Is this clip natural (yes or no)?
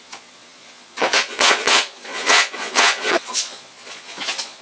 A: no